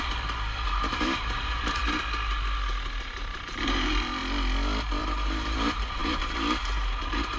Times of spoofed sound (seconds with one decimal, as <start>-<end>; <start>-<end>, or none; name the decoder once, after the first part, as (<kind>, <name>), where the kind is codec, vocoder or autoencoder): 0.0-1.8 (vocoder, BigVGAN v2); 3.0-4.2; 5.0-7.4